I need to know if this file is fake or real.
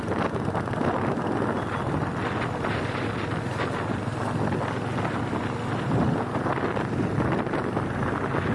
real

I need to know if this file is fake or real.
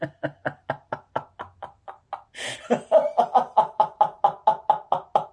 real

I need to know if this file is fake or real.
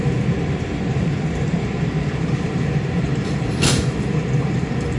fake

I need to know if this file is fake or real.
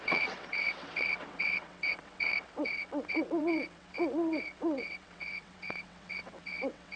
fake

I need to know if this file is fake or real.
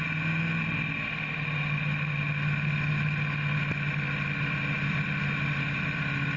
real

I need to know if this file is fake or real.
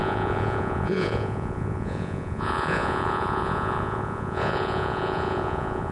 fake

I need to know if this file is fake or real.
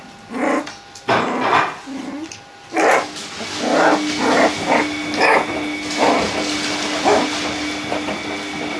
real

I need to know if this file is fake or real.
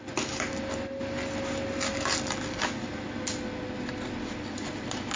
real